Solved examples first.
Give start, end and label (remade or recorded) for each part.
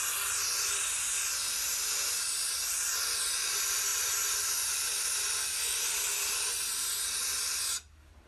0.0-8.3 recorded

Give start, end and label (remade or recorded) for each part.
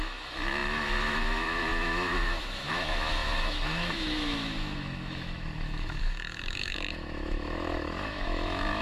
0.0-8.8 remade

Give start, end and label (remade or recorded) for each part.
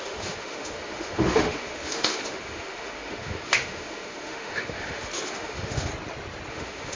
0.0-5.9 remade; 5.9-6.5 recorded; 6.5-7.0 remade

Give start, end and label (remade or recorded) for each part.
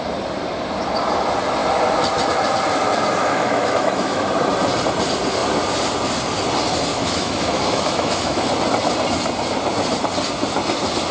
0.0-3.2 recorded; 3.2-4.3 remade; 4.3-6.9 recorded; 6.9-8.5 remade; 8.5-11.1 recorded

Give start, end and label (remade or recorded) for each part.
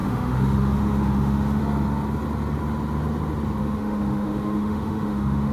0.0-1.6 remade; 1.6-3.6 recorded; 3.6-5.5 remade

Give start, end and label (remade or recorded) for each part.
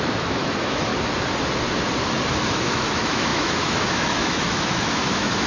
0.0-0.9 remade; 0.9-2.4 recorded; 2.4-5.5 remade